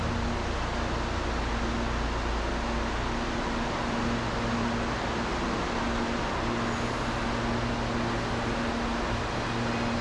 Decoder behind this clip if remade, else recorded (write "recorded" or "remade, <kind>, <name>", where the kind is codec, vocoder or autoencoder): recorded